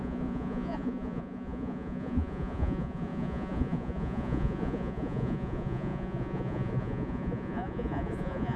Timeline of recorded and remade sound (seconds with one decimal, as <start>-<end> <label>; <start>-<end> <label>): 0.0-8.6 remade